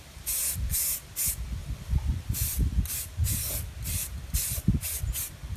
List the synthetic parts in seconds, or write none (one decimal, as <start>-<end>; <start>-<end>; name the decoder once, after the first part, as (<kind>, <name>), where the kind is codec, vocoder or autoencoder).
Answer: 1.6-5.0 (vocoder, BigVGAN v2)